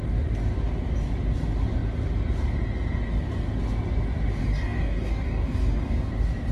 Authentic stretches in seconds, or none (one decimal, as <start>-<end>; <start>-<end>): 0.0-4.4; 6.1-6.5